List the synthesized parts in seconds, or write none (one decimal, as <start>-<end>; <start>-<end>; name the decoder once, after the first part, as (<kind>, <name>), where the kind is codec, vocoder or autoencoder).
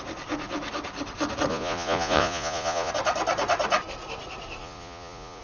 1.5-2.9 (vocoder, Vocos); 4.6-5.4